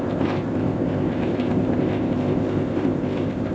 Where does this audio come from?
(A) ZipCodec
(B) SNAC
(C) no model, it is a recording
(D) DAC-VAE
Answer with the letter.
A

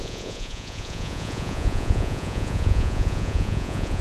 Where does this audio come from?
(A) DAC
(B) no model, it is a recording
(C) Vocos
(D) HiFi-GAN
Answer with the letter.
C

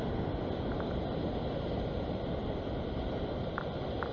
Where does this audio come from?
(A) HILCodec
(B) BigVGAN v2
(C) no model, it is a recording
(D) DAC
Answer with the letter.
C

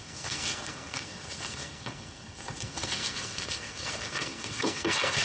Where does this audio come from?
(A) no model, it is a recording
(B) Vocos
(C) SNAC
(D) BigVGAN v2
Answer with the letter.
C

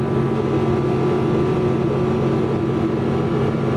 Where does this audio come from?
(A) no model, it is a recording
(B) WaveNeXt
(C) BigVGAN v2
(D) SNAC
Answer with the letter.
A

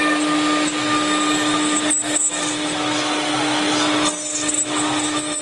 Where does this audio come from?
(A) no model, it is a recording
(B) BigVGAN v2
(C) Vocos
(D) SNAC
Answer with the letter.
A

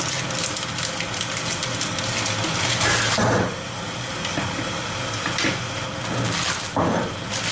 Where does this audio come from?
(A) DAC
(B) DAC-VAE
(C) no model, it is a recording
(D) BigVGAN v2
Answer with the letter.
C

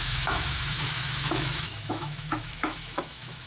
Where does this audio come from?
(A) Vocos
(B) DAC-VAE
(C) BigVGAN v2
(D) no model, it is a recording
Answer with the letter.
B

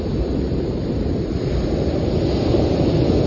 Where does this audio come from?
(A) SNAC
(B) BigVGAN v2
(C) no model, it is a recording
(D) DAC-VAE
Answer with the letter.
C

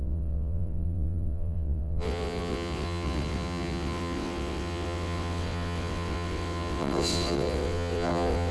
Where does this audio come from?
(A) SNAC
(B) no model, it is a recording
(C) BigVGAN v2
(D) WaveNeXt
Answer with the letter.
D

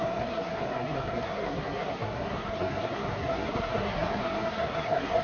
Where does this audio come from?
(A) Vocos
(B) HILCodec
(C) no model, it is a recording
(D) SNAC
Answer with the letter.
D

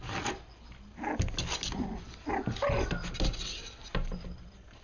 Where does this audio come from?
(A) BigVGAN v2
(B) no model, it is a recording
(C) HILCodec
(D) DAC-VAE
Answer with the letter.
B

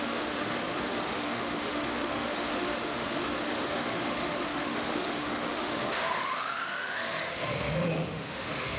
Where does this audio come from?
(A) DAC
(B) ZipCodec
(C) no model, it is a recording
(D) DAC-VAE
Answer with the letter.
D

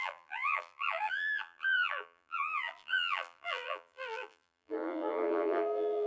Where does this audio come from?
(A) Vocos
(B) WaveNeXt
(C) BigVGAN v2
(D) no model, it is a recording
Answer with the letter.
C